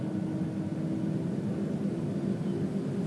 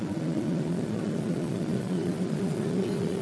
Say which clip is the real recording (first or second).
first